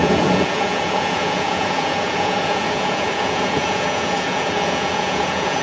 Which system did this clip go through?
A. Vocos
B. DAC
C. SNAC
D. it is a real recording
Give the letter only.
A